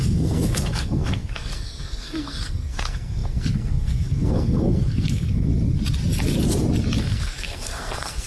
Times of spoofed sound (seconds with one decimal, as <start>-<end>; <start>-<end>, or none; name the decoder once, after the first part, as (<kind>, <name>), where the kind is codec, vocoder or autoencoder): 0.0-5.5 (codec, SNAC); 7.0-8.3